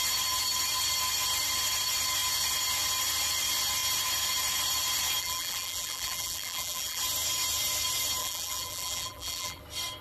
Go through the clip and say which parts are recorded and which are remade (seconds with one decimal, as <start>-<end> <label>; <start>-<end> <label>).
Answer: 0.0-5.2 recorded; 5.2-7.0 remade; 7.0-8.2 recorded; 8.2-9.6 remade; 9.6-10.0 recorded